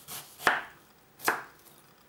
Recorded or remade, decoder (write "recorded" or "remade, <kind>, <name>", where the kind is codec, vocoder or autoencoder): recorded